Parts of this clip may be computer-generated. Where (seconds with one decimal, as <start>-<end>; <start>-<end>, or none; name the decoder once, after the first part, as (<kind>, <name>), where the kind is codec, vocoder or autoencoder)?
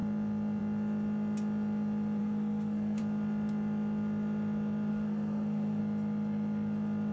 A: 2.2-3.0 (codec, SNAC); 4.9-5.8